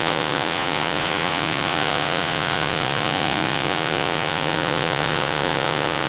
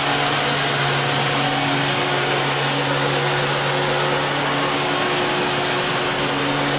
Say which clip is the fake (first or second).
first